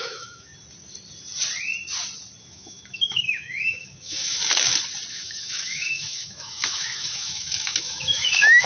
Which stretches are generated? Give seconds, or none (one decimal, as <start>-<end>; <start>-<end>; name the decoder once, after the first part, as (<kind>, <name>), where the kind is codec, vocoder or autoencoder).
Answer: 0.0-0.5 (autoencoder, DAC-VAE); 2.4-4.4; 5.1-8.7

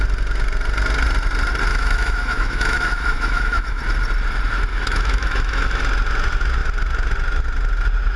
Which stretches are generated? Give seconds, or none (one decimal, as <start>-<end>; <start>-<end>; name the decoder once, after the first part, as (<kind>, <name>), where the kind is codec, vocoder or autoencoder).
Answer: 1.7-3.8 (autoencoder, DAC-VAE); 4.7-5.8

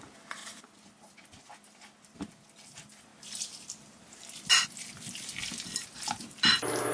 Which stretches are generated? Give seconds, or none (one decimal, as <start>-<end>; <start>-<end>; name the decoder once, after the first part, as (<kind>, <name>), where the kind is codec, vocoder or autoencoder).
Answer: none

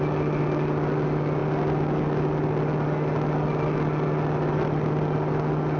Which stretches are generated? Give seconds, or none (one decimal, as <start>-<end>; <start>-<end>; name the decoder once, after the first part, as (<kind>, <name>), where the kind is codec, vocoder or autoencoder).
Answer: none